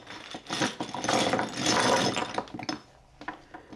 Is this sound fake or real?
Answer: real